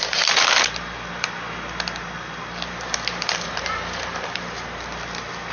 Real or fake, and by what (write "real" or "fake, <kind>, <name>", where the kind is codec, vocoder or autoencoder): real